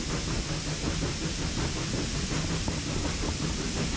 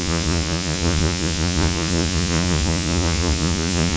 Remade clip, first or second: second